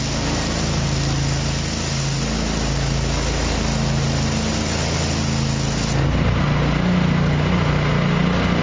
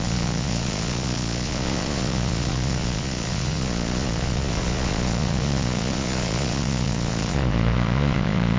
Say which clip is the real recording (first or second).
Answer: first